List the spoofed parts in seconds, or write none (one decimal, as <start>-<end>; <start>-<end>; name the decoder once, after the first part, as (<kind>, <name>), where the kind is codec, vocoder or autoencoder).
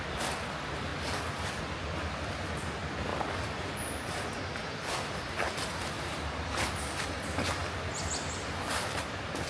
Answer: 3.1-4.2 (vocoder, BigVGAN v2)